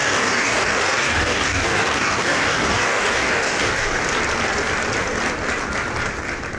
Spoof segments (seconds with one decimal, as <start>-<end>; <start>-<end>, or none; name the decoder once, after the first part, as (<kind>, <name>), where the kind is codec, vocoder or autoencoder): 0.0-4.0 (codec, DAC)